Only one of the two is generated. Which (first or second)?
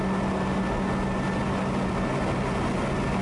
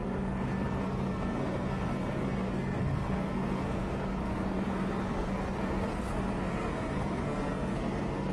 second